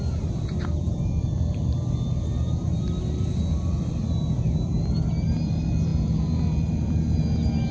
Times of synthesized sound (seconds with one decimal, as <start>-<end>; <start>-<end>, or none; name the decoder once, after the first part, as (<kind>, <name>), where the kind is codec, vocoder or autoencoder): none